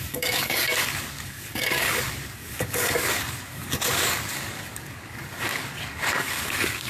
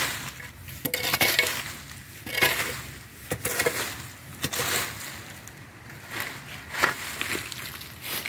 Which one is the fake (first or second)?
first